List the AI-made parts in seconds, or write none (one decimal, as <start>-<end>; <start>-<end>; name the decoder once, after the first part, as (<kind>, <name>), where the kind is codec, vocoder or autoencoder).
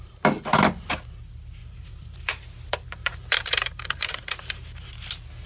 1.6-4.9 (vocoder, BigVGAN v2)